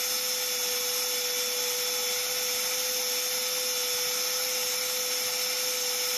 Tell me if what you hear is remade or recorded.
recorded